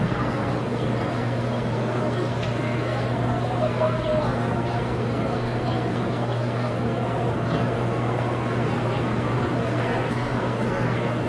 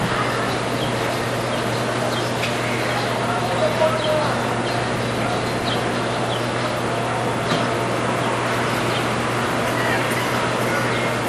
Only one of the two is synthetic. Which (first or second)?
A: first